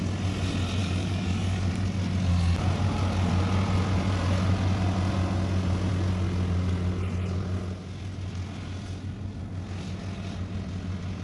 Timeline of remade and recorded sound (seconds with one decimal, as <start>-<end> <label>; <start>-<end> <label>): 0.0-0.8 recorded; 0.8-1.7 remade; 1.7-11.2 recorded